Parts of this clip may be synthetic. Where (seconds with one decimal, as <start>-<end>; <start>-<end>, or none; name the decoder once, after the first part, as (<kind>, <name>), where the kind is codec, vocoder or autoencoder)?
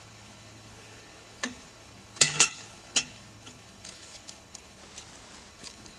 0.0-4.8 (codec, HILCodec); 5.5-6.0